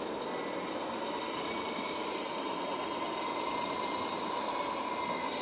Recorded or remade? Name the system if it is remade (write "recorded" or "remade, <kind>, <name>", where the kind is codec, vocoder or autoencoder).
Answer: recorded